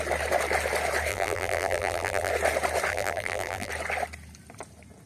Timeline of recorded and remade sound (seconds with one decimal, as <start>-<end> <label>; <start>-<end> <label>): 0.0-1.1 recorded; 1.1-2.3 remade; 2.3-2.9 recorded; 2.9-3.7 remade; 3.7-5.1 recorded